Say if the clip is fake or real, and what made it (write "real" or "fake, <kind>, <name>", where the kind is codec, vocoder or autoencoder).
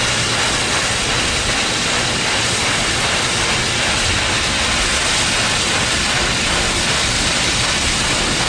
real